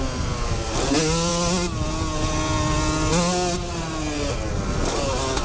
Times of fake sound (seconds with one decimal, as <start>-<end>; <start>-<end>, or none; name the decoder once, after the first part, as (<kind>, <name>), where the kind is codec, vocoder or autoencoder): none